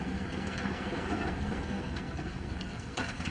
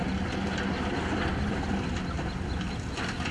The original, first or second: second